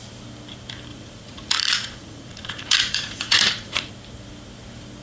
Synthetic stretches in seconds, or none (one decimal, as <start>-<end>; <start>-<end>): 0.9-3.9

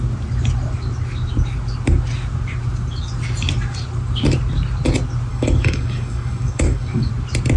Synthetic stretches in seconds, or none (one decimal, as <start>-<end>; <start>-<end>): 5.3-7.1